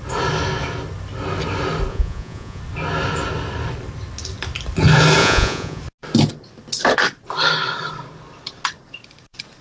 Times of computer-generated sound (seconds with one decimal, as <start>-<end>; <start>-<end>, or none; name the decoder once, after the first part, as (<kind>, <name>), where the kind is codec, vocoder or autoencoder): 1.9-2.6 (vocoder, Vocos); 5.2-5.8